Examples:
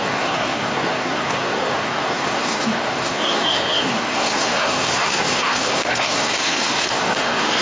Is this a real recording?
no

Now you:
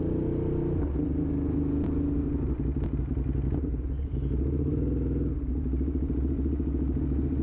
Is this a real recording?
yes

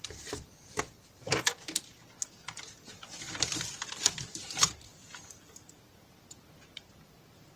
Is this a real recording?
no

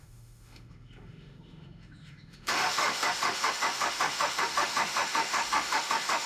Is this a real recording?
no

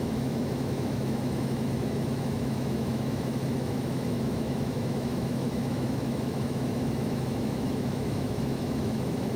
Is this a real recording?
no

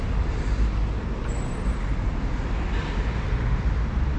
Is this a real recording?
yes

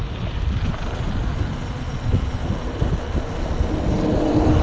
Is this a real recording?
yes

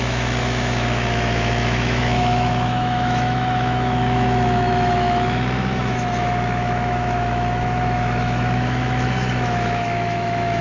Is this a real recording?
no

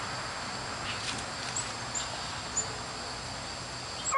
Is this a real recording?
yes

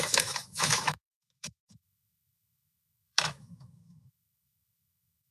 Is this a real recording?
no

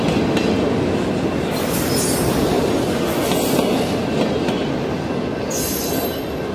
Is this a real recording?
yes